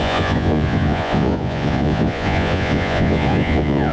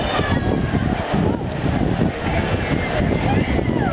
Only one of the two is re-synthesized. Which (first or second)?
first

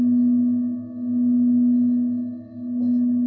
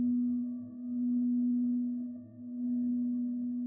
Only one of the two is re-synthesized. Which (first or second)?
second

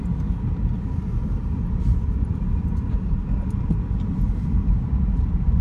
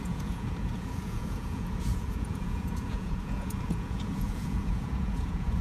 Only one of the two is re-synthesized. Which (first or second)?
second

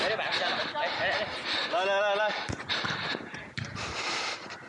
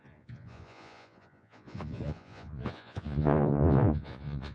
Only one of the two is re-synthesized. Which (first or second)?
second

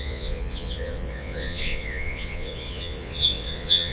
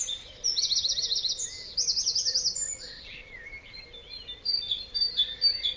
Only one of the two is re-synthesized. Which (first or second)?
first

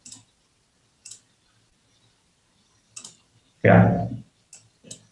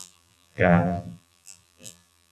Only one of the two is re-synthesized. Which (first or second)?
second